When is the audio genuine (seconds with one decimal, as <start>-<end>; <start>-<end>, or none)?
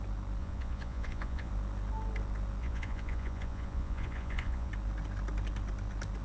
0.0-0.4; 1.5-2.6; 4.7-6.2